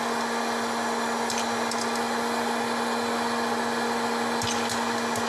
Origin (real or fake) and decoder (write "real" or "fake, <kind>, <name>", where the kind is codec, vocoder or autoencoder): real